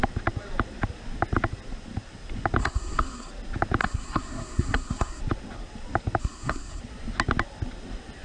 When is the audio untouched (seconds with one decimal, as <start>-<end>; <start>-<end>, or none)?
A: 0.0-2.6; 3.3-3.8; 5.2-6.2; 6.8-8.2